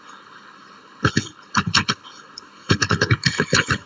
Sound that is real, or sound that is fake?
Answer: fake